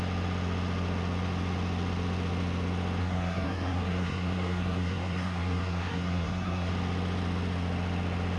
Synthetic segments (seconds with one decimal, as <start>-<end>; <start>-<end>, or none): 3.0-6.7